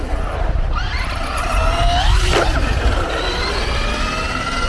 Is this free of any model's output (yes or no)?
yes